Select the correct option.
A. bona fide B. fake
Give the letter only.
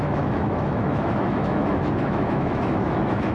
B